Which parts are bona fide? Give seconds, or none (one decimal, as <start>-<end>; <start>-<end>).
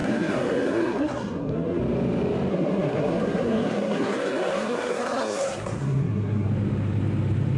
1.8-2.5; 6.5-7.6